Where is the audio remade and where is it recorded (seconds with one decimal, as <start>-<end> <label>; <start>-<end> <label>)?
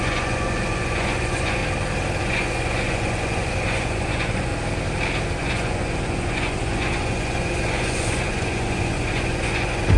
0.0-1.6 remade; 1.6-2.2 recorded; 2.2-4.5 remade; 4.5-5.4 recorded; 5.4-10.0 remade